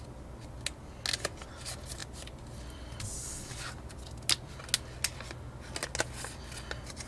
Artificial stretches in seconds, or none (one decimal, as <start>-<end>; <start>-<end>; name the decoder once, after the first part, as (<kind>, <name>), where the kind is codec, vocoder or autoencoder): none